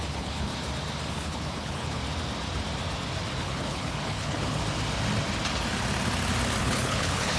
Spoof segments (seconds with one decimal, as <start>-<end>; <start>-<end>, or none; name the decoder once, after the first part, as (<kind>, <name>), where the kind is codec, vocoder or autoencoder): 0.0-0.5 (codec, HILCodec); 1.1-2.0; 3.4-4.6; 6.6-7.4